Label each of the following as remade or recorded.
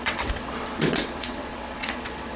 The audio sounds remade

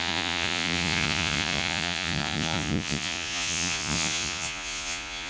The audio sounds remade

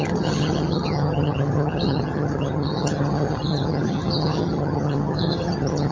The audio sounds remade